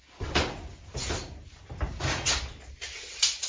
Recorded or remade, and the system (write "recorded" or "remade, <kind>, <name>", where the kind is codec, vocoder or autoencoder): recorded